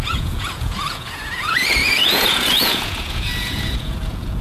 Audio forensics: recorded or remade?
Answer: remade